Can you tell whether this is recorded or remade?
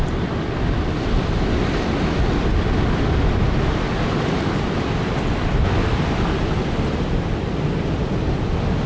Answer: recorded